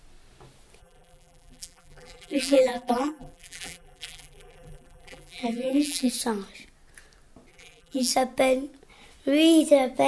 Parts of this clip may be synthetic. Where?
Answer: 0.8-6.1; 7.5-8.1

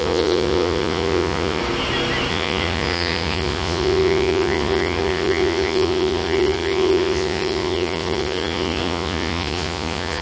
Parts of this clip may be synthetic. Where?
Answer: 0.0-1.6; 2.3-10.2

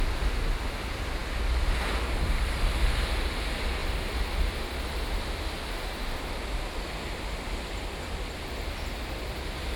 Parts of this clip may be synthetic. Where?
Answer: none